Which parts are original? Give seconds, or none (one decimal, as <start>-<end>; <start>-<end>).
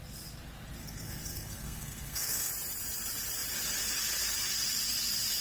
0.0-0.8; 2.5-5.4